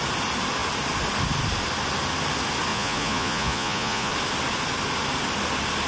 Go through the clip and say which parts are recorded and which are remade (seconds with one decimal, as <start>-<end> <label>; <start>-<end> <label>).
0.0-2.7 recorded; 2.7-4.1 remade; 4.1-5.9 recorded